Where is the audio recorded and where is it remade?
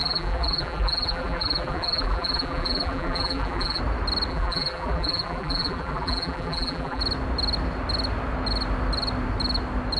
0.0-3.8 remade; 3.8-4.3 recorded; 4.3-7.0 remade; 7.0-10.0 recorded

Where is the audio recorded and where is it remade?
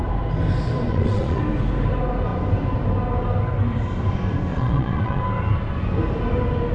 0.0-0.9 recorded; 0.9-1.4 remade; 1.4-4.5 recorded; 4.5-5.2 remade; 5.2-6.7 recorded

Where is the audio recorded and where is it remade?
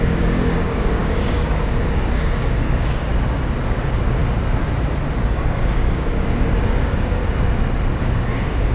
0.0-3.1 remade; 3.1-3.8 recorded; 3.8-4.2 remade; 4.2-5.3 recorded; 5.3-7.2 remade; 7.2-7.9 recorded; 7.9-8.7 remade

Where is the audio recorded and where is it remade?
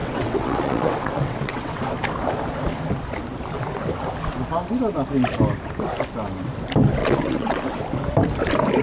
0.0-1.8 remade; 1.8-7.0 recorded; 7.0-7.6 remade; 7.6-8.8 recorded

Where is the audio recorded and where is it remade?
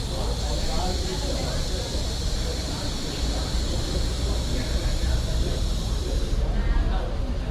0.0-1.1 recorded; 1.1-1.7 remade; 1.7-2.5 recorded; 2.5-6.9 remade; 6.9-7.5 recorded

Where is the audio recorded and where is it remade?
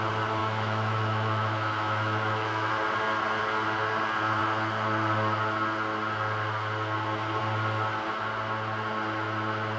0.0-0.4 recorded; 0.4-2.7 remade; 2.7-9.8 recorded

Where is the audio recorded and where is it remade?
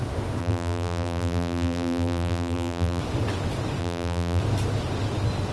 0.0-0.4 recorded; 0.4-3.0 remade; 3.0-3.8 recorded; 3.8-4.4 remade; 4.4-5.5 recorded